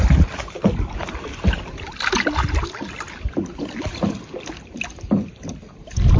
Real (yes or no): yes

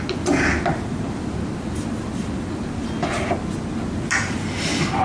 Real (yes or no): yes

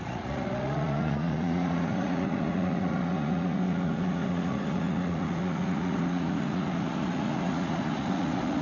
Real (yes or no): no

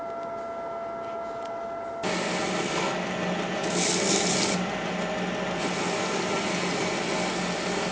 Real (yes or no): yes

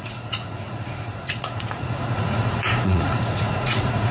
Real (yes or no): no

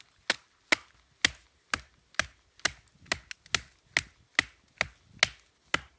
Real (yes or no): yes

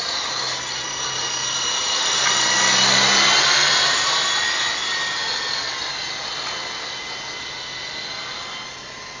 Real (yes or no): yes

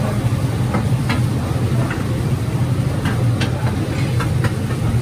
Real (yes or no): yes